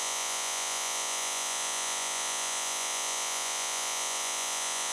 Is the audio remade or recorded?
remade